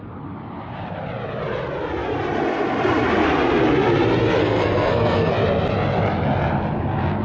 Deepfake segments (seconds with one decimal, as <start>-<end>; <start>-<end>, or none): 4.4-5.3